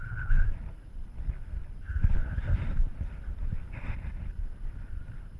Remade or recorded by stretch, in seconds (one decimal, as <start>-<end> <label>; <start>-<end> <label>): 0.0-5.4 recorded